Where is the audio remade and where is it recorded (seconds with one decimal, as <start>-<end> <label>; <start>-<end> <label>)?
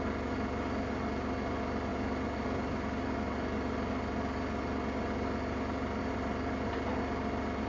0.0-7.7 recorded